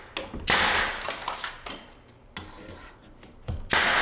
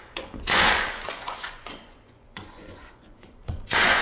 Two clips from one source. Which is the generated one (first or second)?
second